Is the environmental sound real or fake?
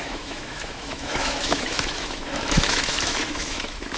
fake